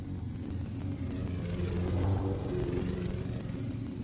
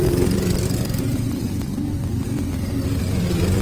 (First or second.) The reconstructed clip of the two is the second